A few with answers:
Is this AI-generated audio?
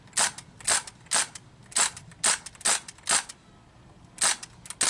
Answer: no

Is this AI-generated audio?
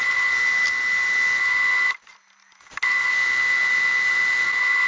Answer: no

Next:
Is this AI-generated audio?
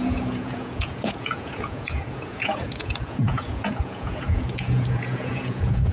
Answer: yes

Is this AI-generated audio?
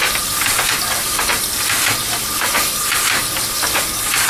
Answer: no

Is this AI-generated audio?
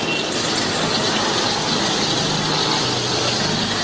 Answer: no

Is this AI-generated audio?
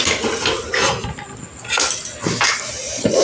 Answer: no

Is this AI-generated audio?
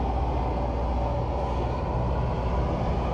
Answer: no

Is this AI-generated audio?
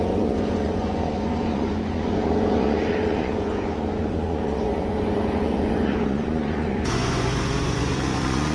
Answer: yes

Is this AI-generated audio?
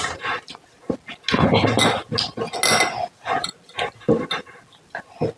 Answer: no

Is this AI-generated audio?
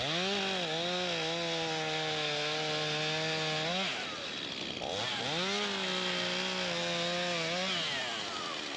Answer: no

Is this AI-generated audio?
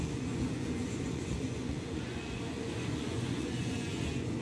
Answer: yes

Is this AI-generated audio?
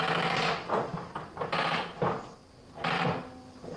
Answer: no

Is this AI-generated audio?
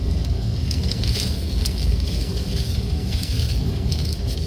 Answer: yes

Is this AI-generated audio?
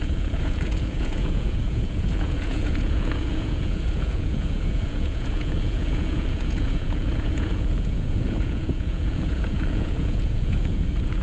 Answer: yes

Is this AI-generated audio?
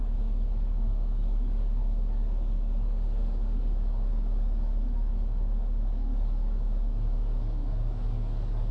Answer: yes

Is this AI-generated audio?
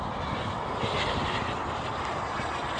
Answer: no